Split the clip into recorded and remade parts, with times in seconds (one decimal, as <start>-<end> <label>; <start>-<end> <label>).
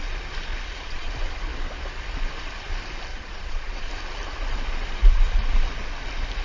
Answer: 0.0-0.5 recorded; 0.5-1.1 remade; 1.1-3.1 recorded; 3.1-3.9 remade; 3.9-6.4 recorded